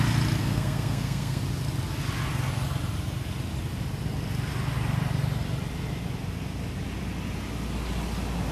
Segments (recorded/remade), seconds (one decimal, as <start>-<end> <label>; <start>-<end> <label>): 0.0-0.4 recorded; 0.4-1.4 remade; 1.4-8.5 recorded